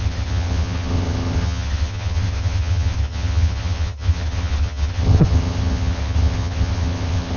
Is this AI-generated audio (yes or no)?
yes